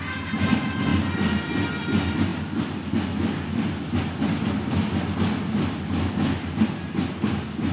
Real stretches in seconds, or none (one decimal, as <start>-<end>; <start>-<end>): 0.0-7.7